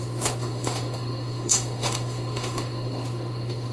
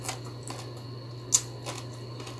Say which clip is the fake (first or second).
first